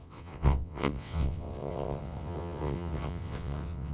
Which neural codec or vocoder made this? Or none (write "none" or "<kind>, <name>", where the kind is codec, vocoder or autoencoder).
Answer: vocoder, WaveNeXt